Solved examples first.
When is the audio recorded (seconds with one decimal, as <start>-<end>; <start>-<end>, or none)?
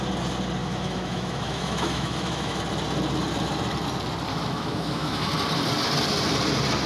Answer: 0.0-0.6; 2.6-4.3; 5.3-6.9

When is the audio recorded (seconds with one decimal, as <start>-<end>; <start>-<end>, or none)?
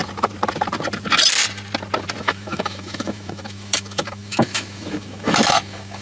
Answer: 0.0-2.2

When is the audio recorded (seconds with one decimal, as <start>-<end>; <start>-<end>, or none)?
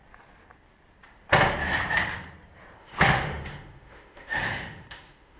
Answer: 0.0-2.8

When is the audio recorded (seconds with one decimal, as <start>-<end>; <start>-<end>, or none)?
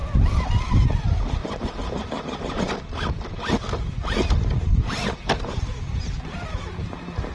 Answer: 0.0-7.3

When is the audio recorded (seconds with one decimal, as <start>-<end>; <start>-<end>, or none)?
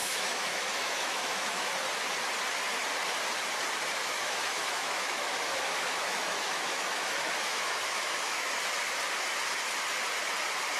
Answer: 1.7-4.0; 8.6-10.8